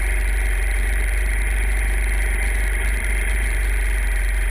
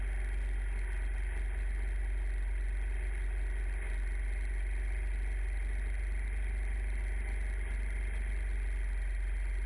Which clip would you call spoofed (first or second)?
first